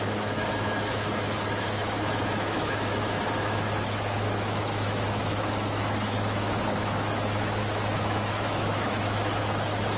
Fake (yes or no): yes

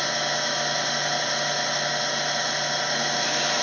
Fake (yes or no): no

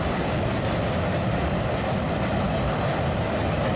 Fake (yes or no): no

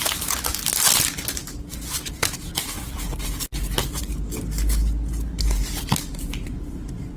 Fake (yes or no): no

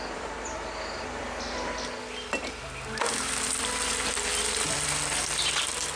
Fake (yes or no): yes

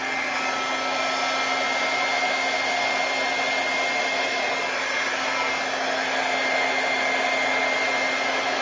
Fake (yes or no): no